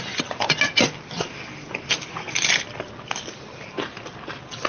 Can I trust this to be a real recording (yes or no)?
yes